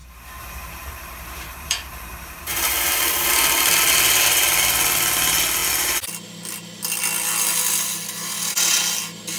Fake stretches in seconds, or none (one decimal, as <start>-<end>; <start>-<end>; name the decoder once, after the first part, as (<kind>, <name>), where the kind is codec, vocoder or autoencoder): 0.0-3.3 (vocoder, BigVGAN v2)